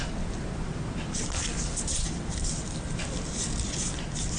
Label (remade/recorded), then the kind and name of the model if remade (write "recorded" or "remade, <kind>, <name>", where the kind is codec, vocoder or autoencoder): remade, vocoder, BigVGAN v2